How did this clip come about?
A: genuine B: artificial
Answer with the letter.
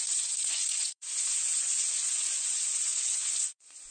B